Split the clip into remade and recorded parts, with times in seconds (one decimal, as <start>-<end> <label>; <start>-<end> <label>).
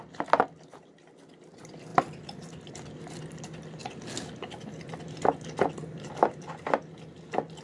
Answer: 0.0-1.9 recorded; 1.9-2.7 remade; 2.7-7.6 recorded